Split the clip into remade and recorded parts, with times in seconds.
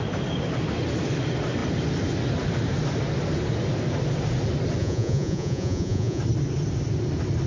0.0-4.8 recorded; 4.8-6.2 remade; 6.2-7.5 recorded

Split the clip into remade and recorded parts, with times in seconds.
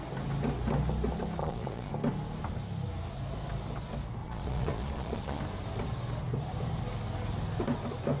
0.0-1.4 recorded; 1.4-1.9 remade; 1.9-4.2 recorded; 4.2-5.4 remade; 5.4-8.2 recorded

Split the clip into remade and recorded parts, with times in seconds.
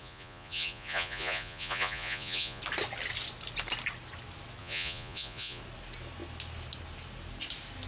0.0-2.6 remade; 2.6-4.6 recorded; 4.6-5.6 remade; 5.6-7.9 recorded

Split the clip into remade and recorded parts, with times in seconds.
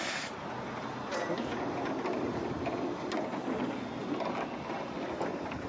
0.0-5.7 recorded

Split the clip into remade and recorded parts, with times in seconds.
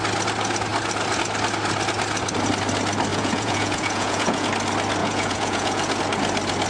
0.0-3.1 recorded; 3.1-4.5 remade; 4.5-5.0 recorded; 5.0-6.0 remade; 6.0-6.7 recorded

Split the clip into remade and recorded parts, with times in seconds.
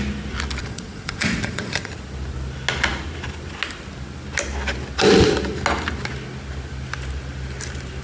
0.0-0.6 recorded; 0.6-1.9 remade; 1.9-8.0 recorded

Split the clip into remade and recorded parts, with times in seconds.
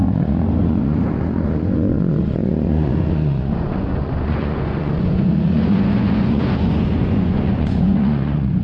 0.0-8.6 remade